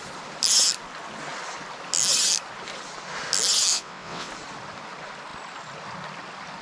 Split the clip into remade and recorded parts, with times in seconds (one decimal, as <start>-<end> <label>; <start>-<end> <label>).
0.0-3.7 recorded; 3.7-4.3 remade; 4.3-6.6 recorded